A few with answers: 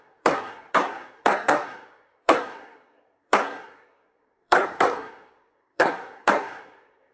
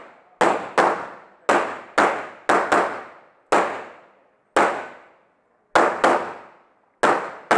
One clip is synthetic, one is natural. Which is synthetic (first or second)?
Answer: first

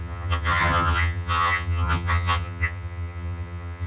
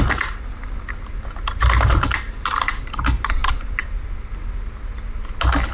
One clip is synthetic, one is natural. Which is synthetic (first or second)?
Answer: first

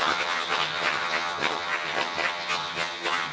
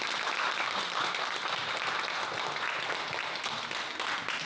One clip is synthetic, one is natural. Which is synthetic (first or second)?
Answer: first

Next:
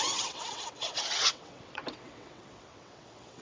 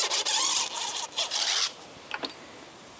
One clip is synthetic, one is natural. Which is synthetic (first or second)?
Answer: first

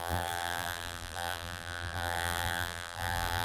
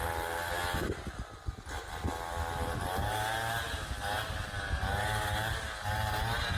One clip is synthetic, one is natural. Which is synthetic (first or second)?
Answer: first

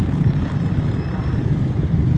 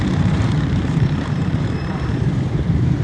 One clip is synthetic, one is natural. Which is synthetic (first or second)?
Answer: second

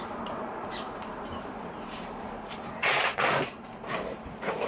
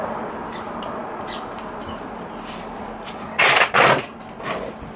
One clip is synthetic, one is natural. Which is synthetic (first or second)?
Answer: first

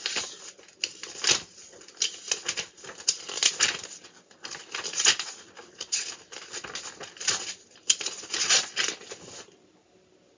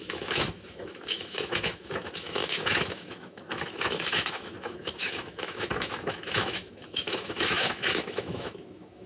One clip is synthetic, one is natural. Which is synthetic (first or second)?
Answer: second